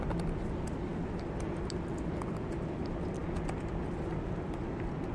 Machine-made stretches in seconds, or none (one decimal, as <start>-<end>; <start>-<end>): none